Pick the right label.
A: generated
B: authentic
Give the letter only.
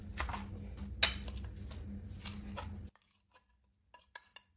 B